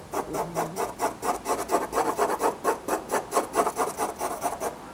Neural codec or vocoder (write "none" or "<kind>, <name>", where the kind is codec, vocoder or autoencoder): none